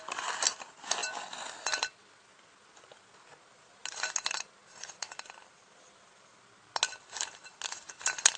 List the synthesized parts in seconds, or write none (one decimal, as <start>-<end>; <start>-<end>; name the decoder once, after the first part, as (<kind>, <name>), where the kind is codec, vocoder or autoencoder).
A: none